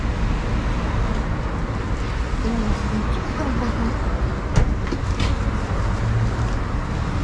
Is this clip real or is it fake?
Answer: real